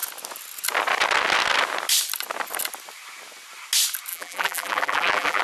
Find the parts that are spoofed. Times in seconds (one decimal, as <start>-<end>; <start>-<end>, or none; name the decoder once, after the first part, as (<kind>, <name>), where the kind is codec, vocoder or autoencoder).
4.1-5.4 (vocoder, BigVGAN v2)